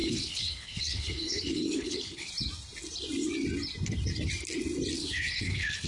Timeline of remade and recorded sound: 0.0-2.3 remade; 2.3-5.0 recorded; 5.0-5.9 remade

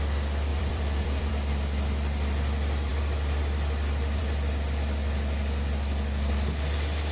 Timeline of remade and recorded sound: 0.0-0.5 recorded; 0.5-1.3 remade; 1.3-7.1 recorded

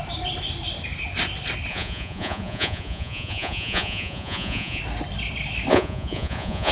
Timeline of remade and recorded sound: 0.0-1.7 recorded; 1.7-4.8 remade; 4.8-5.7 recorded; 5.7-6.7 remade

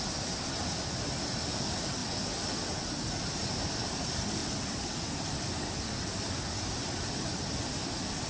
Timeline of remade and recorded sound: 0.0-8.3 recorded

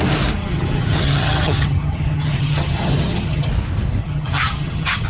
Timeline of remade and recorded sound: 0.0-0.4 recorded; 0.4-3.5 remade; 3.5-4.0 recorded; 4.0-5.1 remade

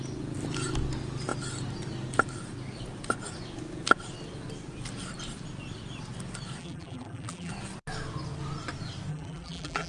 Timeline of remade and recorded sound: 0.0-6.6 recorded; 6.6-7.5 remade; 7.5-9.1 recorded; 9.1-9.9 remade